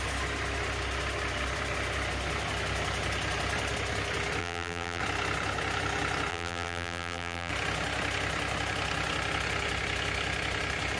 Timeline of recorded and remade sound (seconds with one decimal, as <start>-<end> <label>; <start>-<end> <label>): 0.0-4.4 recorded; 4.4-5.0 remade; 5.0-6.3 recorded; 6.3-7.5 remade; 7.5-11.0 recorded